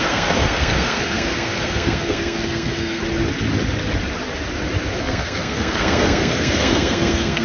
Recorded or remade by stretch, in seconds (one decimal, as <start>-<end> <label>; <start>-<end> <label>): 0.0-3.0 remade; 3.0-5.0 recorded; 5.0-7.4 remade

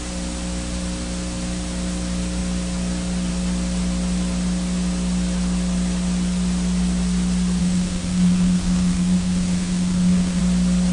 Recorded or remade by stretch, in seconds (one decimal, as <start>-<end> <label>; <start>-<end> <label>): 0.0-7.6 recorded; 7.6-10.4 remade; 10.4-10.9 recorded